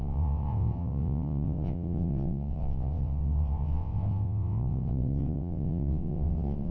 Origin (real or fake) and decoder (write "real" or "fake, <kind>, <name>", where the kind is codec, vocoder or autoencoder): fake, vocoder, WaveNeXt